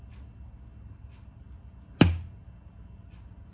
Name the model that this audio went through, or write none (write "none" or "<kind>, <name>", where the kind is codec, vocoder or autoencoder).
none